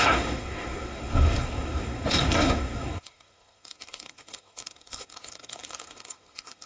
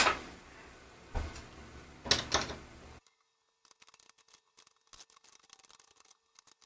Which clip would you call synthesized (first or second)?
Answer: first